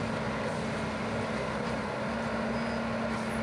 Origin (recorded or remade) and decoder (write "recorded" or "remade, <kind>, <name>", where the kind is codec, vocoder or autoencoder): recorded